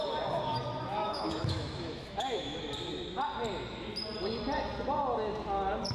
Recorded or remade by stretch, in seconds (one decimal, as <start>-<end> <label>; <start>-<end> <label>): 0.0-1.0 recorded; 1.0-2.6 remade; 2.6-5.9 recorded